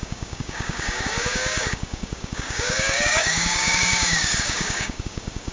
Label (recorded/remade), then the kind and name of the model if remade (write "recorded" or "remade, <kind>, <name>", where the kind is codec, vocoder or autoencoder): remade, codec, DAC